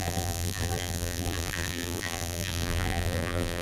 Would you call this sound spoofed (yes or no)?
yes